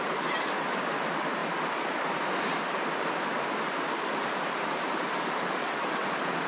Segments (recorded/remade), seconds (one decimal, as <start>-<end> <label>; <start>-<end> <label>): 0.0-5.6 recorded; 5.6-6.1 remade; 6.1-6.5 recorded